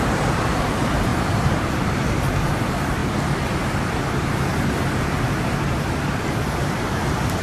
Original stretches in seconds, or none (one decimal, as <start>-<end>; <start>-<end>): 3.0-5.1